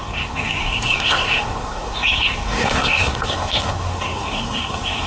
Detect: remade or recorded remade